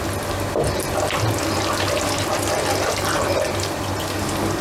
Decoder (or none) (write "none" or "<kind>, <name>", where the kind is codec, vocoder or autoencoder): none